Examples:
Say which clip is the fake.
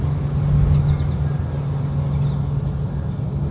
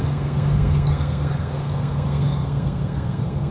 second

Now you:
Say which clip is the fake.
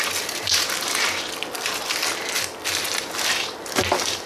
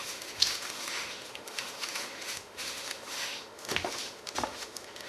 second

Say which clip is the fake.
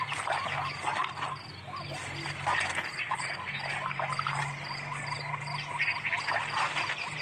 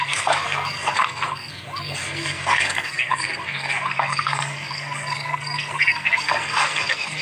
second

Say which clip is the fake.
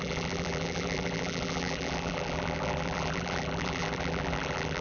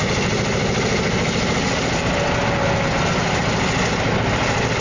first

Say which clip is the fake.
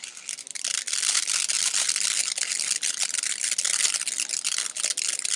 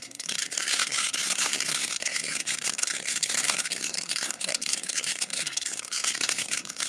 second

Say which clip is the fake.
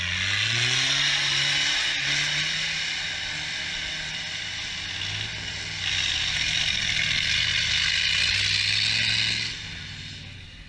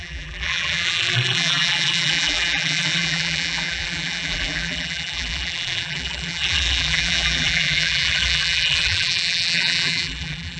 second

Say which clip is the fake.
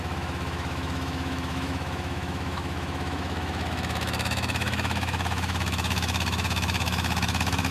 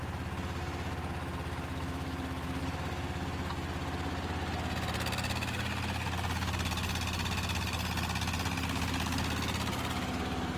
first